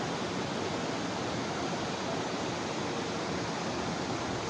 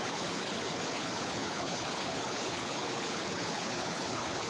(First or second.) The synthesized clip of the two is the second